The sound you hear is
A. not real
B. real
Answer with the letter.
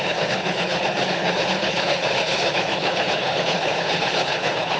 A